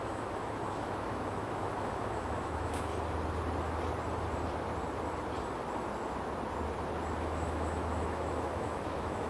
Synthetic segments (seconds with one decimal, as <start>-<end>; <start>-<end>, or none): 0.0-2.9; 7.2-9.3